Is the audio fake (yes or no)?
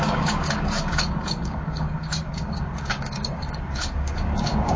yes